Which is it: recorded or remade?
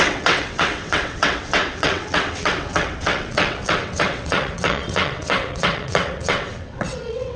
remade